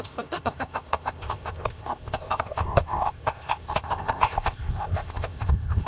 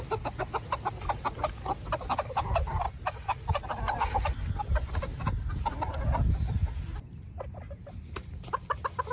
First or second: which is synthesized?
first